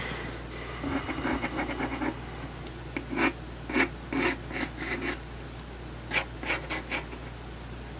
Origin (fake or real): real